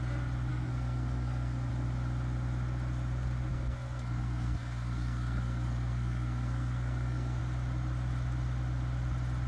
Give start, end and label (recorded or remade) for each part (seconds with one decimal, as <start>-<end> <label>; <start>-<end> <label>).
0.0-0.5 recorded; 0.5-1.7 remade; 1.7-3.5 recorded; 3.5-7.4 remade; 7.4-9.5 recorded